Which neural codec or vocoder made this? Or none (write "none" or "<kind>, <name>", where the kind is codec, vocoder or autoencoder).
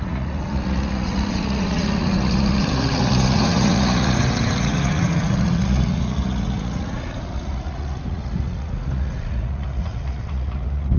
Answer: vocoder, Vocos